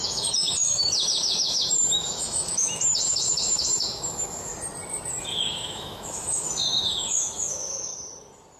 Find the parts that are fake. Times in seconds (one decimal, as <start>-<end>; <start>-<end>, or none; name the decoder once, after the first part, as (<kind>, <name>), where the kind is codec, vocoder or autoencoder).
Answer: 0.0-4.5 (autoencoder, DAC-VAE); 5.2-7.9